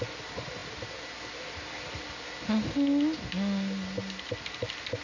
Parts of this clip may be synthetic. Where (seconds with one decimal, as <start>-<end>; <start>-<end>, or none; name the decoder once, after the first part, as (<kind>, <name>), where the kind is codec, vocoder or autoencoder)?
none